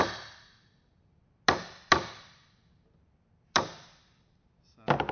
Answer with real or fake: real